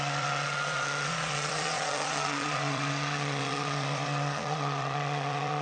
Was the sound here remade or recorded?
remade